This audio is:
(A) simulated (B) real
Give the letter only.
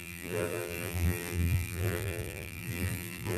A